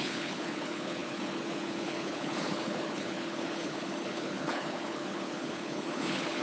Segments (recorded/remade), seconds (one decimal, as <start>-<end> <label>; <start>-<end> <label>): 0.0-6.4 remade